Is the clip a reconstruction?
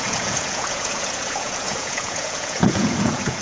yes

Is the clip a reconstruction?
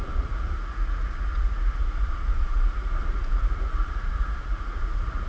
yes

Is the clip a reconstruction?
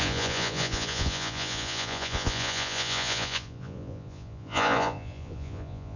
yes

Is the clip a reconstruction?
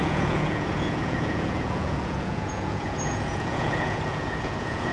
yes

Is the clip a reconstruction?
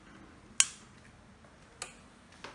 no